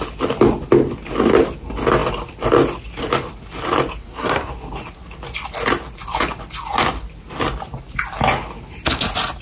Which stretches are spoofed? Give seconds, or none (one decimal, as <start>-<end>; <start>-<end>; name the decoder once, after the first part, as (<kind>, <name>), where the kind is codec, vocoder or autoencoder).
4.0-4.5 (codec, SNAC)